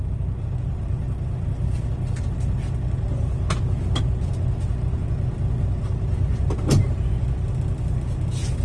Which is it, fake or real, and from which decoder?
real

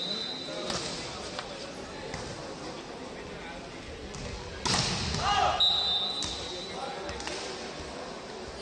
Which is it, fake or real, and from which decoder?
real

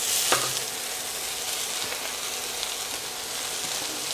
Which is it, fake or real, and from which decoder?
real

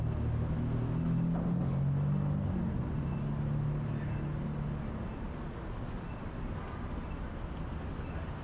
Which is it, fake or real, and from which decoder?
real